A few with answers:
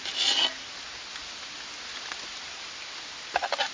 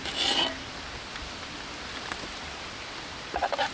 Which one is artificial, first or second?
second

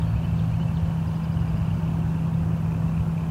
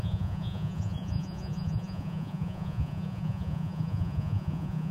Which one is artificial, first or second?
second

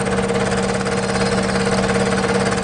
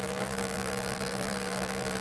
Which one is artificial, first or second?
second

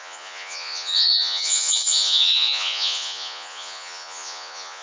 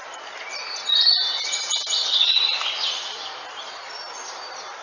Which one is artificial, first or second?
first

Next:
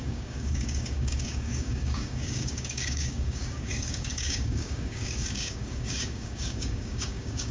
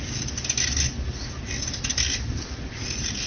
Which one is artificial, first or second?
first